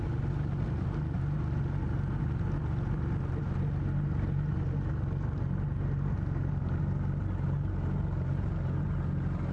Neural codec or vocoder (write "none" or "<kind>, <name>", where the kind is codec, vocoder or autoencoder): none